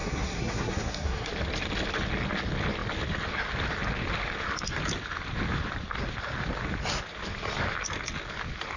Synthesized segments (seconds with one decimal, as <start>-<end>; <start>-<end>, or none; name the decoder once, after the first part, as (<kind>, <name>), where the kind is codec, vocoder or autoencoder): 0.0-1.3 (codec, SNAC)